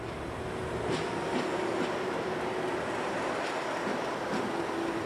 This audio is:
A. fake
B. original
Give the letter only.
B